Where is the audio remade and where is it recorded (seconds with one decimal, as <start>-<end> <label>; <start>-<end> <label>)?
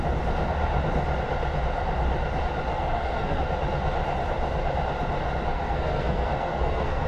0.0-2.7 recorded; 2.7-3.4 remade; 3.4-5.5 recorded; 5.5-7.1 remade